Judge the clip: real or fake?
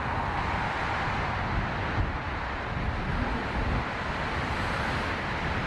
real